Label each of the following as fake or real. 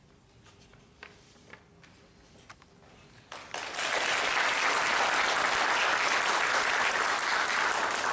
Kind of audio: real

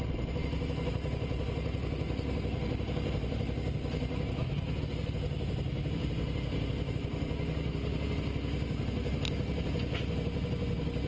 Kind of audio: real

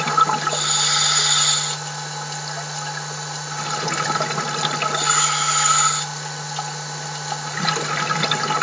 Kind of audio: real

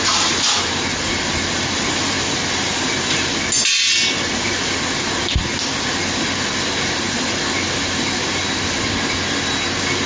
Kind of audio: real